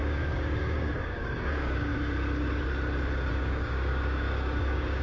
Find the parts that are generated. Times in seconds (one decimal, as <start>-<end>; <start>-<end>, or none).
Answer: 0.0-1.9; 3.3-5.0